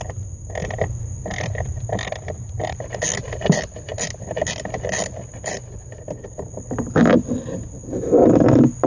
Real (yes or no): yes